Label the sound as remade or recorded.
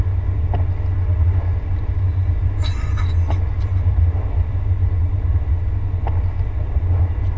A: recorded